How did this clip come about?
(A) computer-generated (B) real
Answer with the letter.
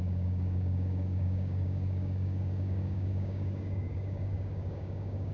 A